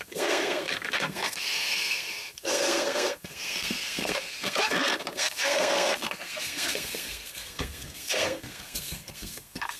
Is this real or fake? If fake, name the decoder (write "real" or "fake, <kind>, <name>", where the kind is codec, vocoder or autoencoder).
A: fake, codec, SNAC